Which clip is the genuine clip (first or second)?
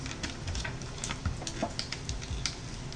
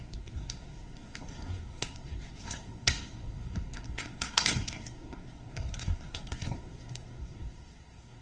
first